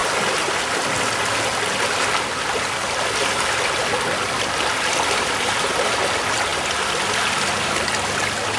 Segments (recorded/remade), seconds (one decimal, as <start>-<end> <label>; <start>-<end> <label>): 0.0-8.6 recorded